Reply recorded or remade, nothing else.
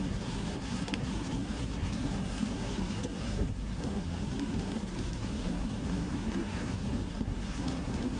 remade